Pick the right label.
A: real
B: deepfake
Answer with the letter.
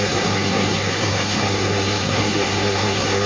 B